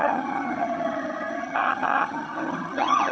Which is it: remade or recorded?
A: remade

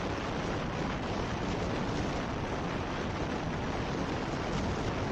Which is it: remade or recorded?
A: recorded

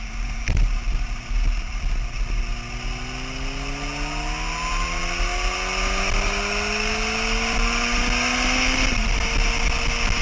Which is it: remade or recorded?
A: recorded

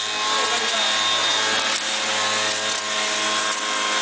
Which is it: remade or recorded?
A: recorded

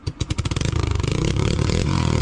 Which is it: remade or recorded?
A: remade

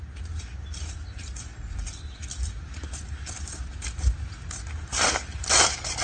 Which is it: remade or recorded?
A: recorded